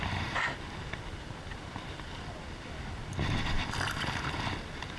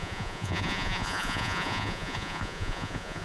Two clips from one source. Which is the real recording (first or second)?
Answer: first